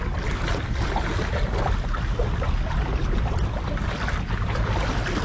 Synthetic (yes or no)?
no